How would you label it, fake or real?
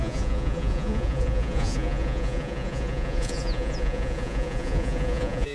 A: fake